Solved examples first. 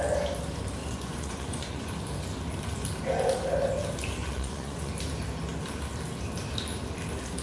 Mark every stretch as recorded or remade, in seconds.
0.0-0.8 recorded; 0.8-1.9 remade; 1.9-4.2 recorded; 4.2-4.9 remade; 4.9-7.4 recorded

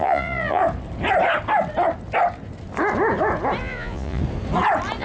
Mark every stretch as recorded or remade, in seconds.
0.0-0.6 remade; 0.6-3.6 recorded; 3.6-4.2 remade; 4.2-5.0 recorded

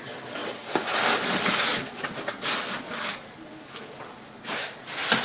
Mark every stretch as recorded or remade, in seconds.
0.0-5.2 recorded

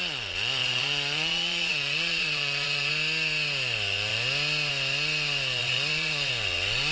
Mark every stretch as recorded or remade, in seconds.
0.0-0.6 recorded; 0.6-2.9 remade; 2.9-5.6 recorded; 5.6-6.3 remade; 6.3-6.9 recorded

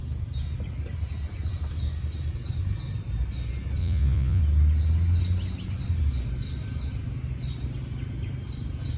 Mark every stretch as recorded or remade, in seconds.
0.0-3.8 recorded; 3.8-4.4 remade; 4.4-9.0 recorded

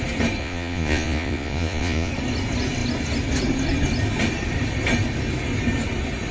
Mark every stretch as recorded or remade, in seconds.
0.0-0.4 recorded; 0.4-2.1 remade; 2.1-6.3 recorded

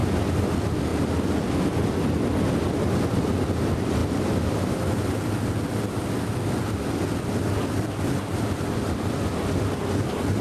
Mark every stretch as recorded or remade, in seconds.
0.0-10.4 recorded